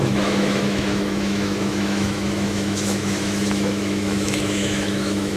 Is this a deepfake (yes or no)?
yes